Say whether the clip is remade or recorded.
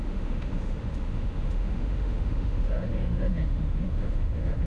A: remade